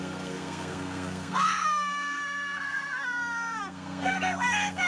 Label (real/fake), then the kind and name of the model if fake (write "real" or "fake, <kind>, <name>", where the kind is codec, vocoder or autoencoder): fake, codec, SNAC